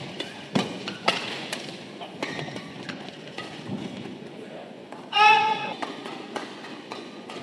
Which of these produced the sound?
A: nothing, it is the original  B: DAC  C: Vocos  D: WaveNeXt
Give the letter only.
C